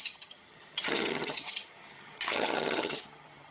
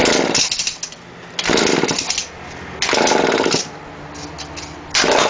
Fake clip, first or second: first